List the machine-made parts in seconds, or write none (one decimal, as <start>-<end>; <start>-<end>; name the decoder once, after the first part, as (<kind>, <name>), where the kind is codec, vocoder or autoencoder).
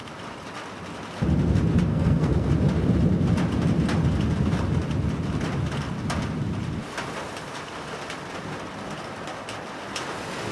1.9-2.5 (codec, SNAC)